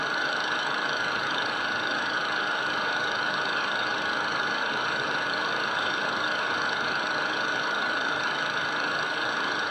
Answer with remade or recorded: remade